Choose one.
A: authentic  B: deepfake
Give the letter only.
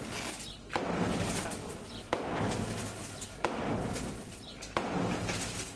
A